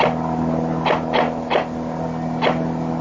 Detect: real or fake real